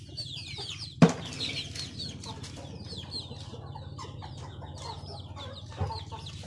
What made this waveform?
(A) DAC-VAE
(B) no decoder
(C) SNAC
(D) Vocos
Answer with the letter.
B